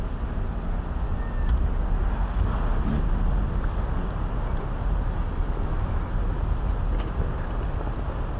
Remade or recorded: recorded